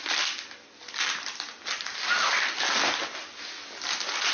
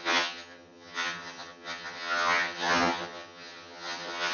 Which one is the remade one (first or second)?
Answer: second